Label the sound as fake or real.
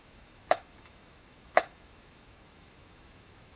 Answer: fake